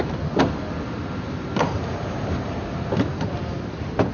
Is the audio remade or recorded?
recorded